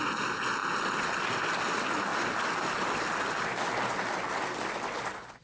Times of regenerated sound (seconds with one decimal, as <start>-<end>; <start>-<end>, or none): 2.1-5.4